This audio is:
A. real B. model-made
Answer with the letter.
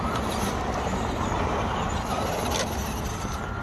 A